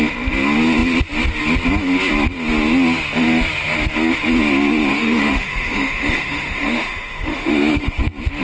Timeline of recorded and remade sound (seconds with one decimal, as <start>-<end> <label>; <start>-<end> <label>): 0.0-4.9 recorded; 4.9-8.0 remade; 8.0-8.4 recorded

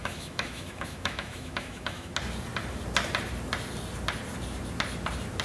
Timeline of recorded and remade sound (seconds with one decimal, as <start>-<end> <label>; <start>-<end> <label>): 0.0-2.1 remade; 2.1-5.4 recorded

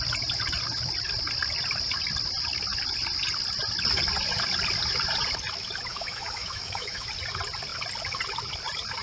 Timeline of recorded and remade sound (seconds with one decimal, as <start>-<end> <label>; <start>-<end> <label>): 0.0-5.9 recorded; 5.9-7.1 remade; 7.1-9.0 recorded